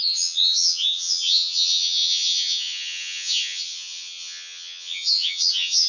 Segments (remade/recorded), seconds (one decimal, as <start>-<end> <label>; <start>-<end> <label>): 0.0-5.9 remade